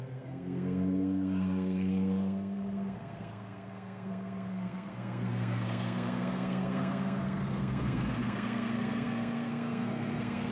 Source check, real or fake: fake